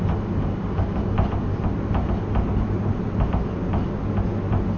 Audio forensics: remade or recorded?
recorded